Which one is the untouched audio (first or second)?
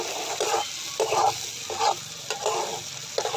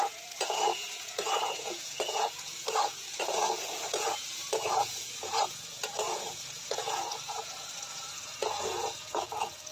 first